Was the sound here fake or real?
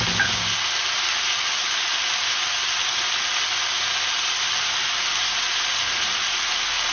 real